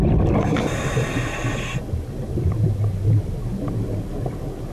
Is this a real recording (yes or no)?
yes